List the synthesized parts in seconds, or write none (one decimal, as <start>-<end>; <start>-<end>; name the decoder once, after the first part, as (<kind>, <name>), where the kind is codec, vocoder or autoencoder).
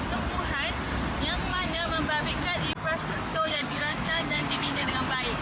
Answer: 1.5-2.0 (codec, DAC); 3.3-4.9